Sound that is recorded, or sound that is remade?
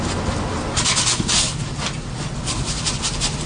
recorded